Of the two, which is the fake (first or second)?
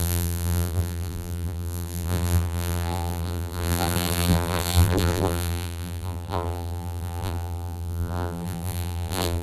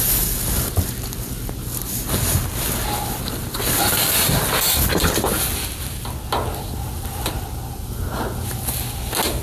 first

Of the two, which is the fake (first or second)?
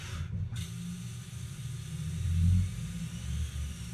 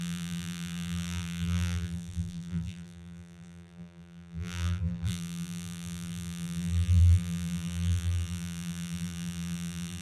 second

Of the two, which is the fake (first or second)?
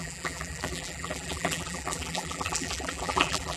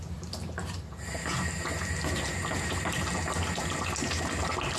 first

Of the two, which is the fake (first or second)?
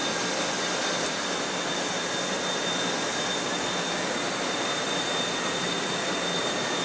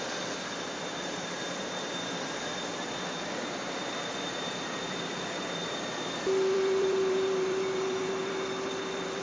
second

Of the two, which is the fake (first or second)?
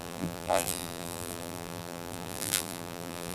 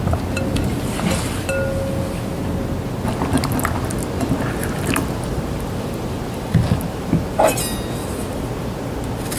first